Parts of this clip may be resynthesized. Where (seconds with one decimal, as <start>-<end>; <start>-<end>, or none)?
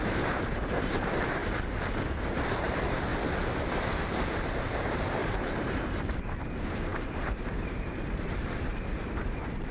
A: 0.0-1.4; 2.1-3.1; 4.4-9.7